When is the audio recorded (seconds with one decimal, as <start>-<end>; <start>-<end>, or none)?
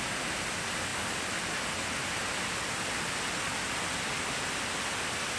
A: 0.0-5.4